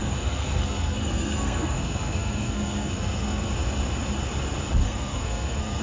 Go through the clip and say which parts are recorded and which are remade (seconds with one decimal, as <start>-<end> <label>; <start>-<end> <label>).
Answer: 0.0-3.5 remade; 3.5-4.8 recorded; 4.8-5.8 remade